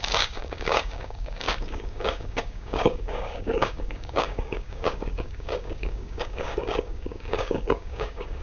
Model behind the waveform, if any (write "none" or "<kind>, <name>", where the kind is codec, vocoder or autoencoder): codec, DAC